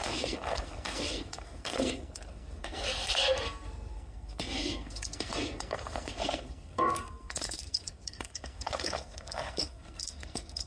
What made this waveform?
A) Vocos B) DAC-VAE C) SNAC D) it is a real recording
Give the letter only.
C